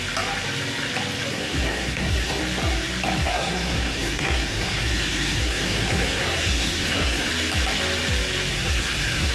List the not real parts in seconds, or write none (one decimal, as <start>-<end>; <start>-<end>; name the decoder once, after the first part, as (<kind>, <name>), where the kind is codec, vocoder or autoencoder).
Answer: 1.3-2.4 (codec, SNAC); 3.2-7.3; 8.5-9.3